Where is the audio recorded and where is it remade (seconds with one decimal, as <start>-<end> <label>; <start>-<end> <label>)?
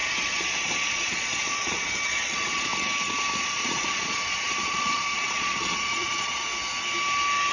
0.0-2.7 remade; 2.7-3.4 recorded; 3.4-6.5 remade; 6.5-7.5 recorded